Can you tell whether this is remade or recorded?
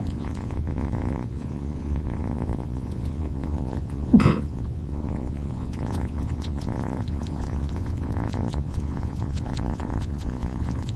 remade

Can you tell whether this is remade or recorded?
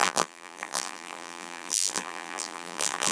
remade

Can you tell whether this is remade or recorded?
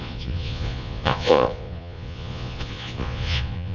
remade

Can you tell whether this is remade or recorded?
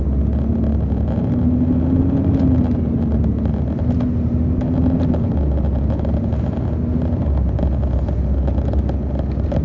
recorded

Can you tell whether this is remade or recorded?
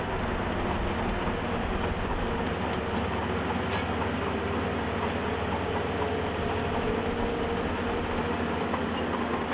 recorded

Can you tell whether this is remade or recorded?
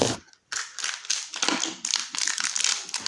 remade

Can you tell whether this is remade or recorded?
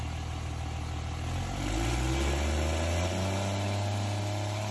recorded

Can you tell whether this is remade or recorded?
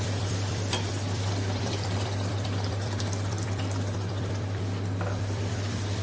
remade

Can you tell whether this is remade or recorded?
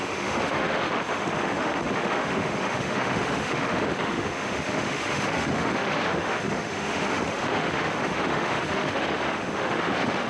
remade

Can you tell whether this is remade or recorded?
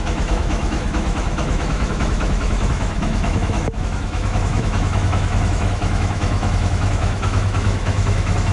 remade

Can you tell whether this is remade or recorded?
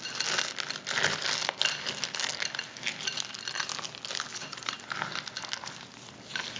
recorded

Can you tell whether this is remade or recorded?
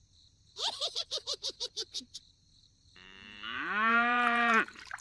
remade